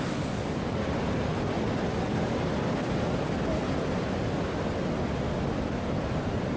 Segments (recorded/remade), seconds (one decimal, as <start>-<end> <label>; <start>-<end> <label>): 0.0-1.3 recorded; 1.3-5.0 remade; 5.0-6.6 recorded